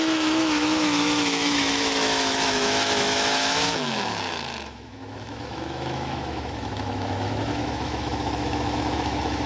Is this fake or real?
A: fake